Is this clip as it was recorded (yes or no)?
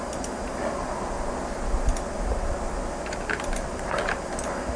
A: yes